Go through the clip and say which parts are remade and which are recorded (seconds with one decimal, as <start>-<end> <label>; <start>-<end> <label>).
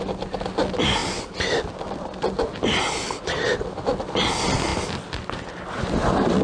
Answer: 0.0-6.4 recorded